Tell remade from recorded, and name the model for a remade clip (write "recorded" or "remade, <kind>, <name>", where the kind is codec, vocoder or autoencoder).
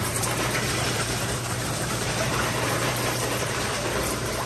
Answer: remade, vocoder, BigVGAN v2